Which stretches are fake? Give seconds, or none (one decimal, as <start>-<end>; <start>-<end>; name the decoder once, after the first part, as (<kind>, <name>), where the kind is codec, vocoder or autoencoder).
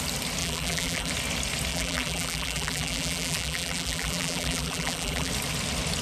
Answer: 0.4-1.1 (vocoder, BigVGAN v2); 1.7-5.3